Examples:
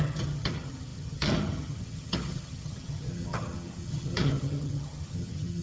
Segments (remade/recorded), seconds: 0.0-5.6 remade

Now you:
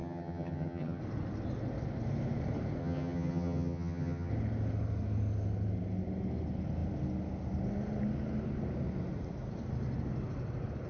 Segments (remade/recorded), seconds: 0.0-1.0 remade; 1.0-2.8 recorded; 2.8-4.3 remade; 4.3-10.9 recorded

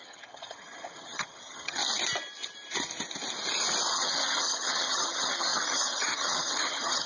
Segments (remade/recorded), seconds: 0.0-1.8 remade; 1.8-3.9 recorded; 3.9-7.1 remade

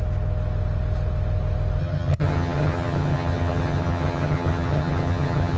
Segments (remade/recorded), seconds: 0.0-1.8 recorded; 1.8-5.6 remade

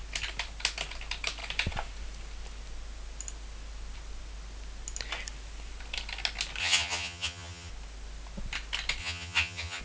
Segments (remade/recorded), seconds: 0.0-6.6 recorded; 6.6-7.7 remade; 7.7-9.0 recorded; 9.0-9.8 remade

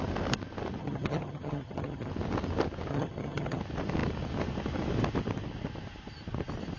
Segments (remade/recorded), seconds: 0.0-0.8 recorded; 0.8-2.1 remade; 2.1-2.9 recorded; 2.9-3.6 remade; 3.6-6.8 recorded

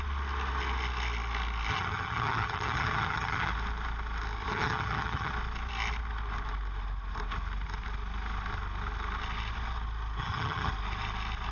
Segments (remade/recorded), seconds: 0.0-1.7 recorded; 1.7-3.5 remade; 3.5-4.5 recorded; 4.5-5.3 remade; 5.3-10.2 recorded; 10.2-10.7 remade; 10.7-11.5 recorded

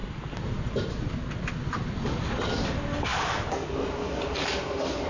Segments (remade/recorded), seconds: 0.0-5.1 recorded